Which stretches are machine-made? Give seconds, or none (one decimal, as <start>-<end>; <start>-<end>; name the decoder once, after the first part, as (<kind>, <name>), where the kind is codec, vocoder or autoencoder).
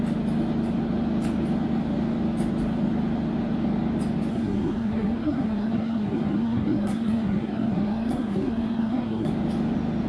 4.3-9.3 (codec, SNAC)